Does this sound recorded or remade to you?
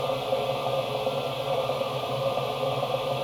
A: recorded